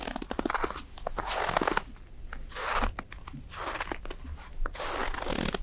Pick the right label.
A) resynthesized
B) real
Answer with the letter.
B